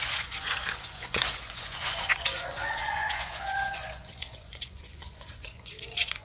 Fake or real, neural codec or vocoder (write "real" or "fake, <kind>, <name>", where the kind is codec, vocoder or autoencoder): fake, vocoder, Vocos